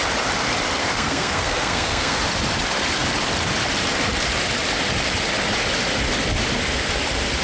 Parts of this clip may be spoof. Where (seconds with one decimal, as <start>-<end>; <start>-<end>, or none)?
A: 0.8-2.2